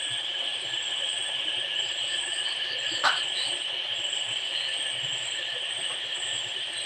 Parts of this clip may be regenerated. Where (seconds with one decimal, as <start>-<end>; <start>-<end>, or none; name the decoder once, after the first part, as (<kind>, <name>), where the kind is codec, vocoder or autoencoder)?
0.0-6.9 (vocoder, BigVGAN v2)